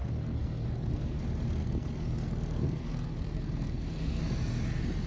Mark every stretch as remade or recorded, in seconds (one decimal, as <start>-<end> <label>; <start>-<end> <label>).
0.0-1.2 remade; 1.2-1.6 recorded; 1.6-4.2 remade; 4.2-5.1 recorded